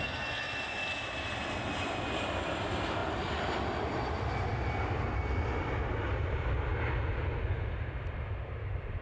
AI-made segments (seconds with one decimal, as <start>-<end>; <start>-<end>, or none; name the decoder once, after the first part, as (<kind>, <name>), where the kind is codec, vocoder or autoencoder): none